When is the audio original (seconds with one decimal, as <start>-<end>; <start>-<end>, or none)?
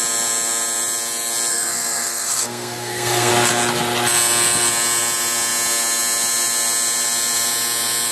0.0-1.5; 3.3-8.1